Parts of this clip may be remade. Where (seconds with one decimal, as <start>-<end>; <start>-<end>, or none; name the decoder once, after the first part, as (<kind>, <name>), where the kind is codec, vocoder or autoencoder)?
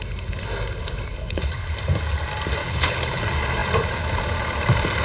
1.1-1.8 (codec, HILCodec); 2.6-3.2